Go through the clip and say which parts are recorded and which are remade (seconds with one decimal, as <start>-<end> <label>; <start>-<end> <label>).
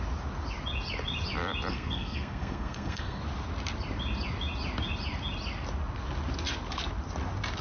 0.0-1.7 recorded; 1.7-3.2 remade; 3.2-7.6 recorded